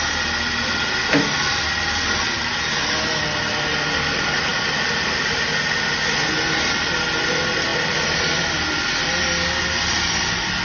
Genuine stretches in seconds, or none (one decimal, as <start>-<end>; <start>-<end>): 0.0-10.6